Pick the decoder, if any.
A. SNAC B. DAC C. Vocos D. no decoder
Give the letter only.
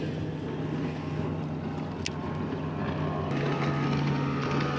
D